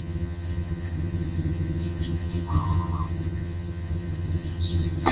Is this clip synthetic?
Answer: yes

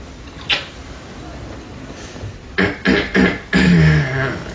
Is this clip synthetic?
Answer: no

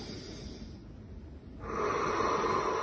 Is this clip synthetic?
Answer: no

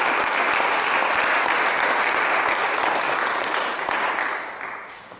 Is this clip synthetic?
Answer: no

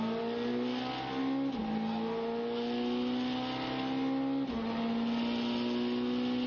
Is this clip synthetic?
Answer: no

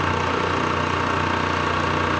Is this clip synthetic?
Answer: no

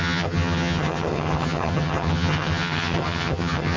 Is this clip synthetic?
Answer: yes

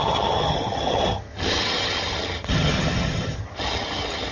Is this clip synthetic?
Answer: yes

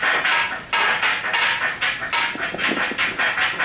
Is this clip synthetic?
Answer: no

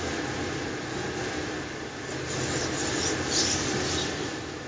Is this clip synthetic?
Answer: no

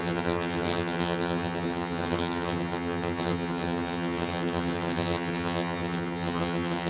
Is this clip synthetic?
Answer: yes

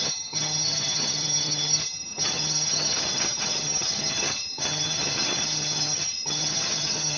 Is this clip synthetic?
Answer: yes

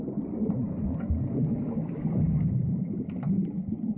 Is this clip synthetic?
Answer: no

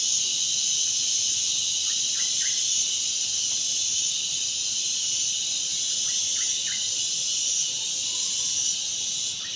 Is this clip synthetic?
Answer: no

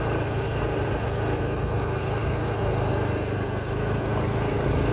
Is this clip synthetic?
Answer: no